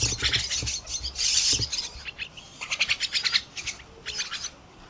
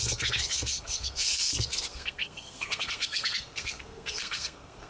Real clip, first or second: first